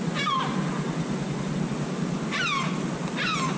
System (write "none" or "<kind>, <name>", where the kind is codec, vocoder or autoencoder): none